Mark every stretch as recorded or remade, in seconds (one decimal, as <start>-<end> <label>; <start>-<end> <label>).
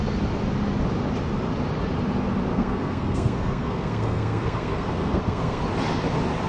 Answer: 0.0-2.5 recorded; 2.5-5.6 remade; 5.6-6.5 recorded